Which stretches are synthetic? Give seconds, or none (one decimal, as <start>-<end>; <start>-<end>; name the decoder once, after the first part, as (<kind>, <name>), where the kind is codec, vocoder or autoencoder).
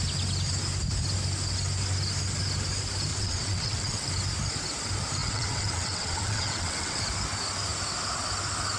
3.1-4.1 (vocoder, WaveNeXt); 5.2-7.0